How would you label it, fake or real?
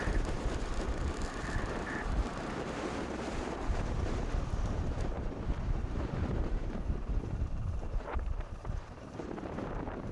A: fake